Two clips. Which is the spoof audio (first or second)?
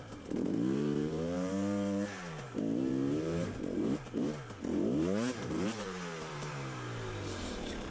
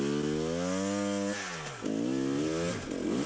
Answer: first